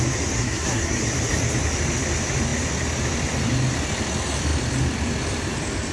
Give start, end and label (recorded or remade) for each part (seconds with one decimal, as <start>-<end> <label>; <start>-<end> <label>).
0.0-0.4 recorded; 0.4-1.0 remade; 1.0-5.9 recorded